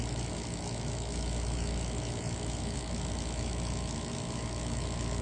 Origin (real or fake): fake